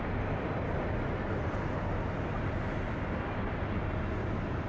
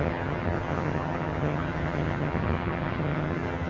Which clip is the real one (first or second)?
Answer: first